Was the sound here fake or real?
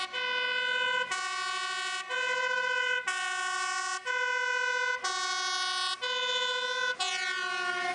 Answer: real